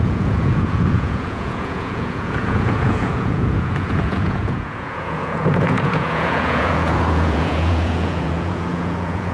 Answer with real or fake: fake